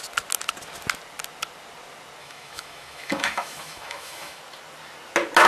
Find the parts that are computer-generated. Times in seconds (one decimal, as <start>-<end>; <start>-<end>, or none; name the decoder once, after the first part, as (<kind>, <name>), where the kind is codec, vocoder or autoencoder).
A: 2.2-4.4 (autoencoder, DAC-VAE)